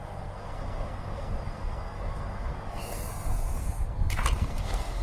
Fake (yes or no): yes